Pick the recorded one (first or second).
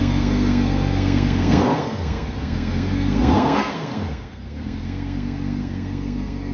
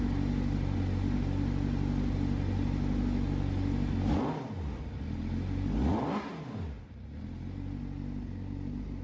second